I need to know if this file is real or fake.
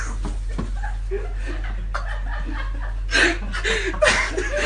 real